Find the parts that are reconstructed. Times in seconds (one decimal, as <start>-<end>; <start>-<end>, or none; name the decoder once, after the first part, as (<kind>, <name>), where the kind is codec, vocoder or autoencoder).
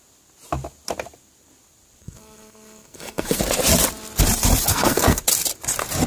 2.0-3.4 (codec, SNAC); 4.7-5.2